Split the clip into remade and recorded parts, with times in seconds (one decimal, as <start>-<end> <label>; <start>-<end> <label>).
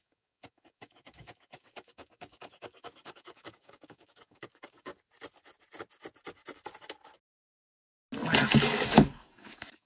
0.0-4.9 remade; 4.9-8.6 recorded; 8.6-9.9 remade